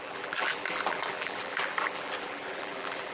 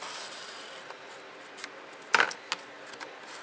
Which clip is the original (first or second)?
second